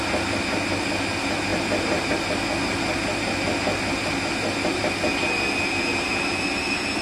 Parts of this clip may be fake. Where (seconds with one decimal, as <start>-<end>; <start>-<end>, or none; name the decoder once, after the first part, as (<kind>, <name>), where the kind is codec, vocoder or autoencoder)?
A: none